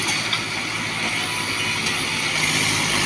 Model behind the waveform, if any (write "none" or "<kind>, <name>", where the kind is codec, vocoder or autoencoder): none